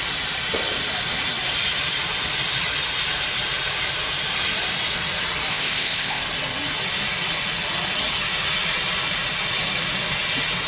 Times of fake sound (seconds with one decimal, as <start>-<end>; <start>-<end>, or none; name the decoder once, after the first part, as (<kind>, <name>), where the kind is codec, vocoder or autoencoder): 5.5-6.2 (codec, ZipCodec)